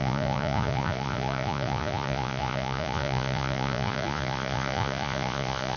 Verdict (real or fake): fake